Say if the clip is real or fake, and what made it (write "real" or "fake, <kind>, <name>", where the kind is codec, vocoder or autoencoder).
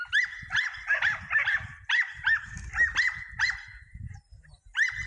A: real